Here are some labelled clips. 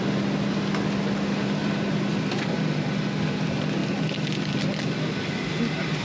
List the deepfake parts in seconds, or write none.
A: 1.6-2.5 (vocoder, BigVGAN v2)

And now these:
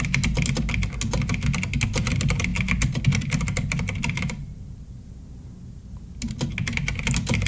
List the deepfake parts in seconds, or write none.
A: none